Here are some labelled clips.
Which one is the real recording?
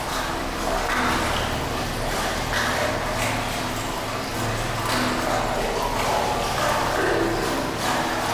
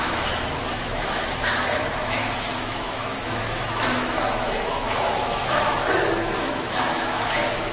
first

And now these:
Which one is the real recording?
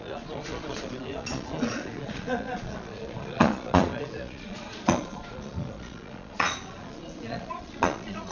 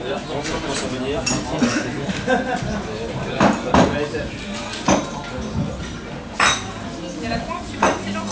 second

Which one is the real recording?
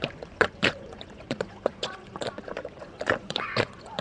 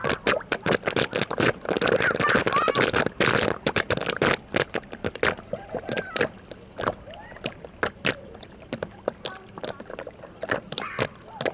second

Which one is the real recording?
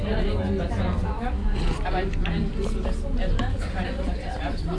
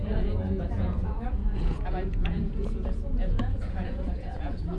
first